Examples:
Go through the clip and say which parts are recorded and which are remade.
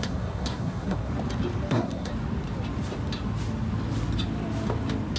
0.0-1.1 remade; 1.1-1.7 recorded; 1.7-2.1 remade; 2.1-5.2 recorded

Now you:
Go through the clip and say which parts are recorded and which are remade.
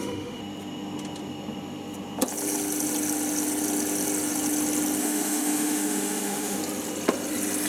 0.0-0.4 remade; 0.4-5.0 recorded; 5.0-6.6 remade; 6.6-7.7 recorded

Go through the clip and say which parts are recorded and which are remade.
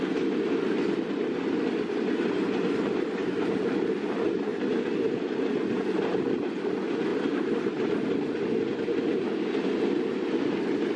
0.0-11.0 recorded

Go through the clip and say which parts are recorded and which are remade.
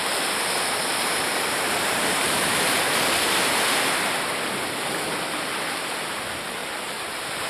0.0-4.1 remade; 4.1-6.6 recorded; 6.6-7.5 remade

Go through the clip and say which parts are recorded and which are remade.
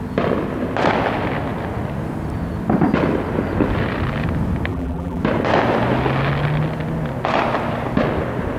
0.0-4.7 recorded; 4.7-5.2 remade; 5.2-8.6 recorded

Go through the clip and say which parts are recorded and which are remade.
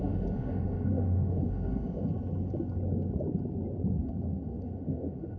0.0-2.1 remade; 2.1-4.0 recorded; 4.0-5.4 remade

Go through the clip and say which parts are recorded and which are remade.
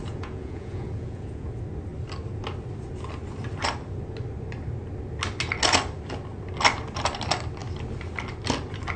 0.0-1.5 remade; 1.5-9.0 recorded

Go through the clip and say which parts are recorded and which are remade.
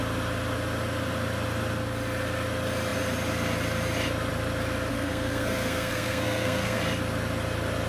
0.0-4.9 recorded; 4.9-6.8 remade; 6.8-7.9 recorded